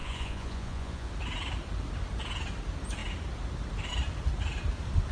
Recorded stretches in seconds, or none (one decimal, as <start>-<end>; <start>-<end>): 1.1-5.1